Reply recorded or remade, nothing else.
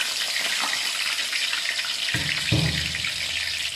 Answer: recorded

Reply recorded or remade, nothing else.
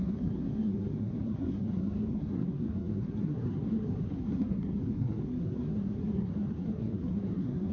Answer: remade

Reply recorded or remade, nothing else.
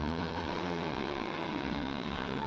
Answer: remade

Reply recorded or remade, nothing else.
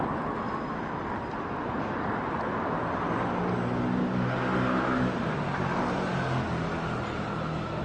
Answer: recorded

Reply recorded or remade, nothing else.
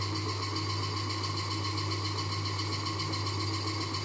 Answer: recorded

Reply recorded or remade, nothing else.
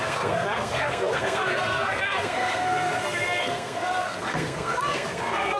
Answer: remade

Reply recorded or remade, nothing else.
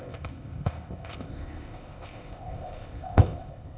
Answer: remade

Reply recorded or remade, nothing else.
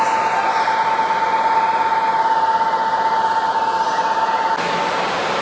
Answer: recorded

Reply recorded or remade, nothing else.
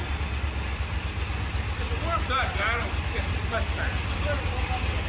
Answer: recorded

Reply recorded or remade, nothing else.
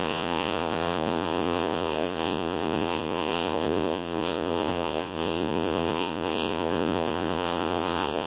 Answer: remade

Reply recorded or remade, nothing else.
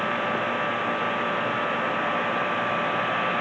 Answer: recorded